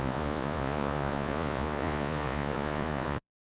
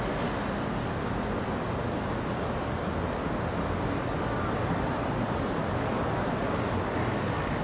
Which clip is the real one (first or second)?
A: second